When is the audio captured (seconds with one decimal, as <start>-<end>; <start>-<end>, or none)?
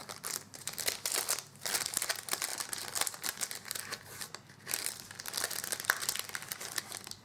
0.0-7.2